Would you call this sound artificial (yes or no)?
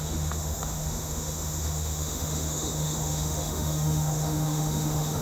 yes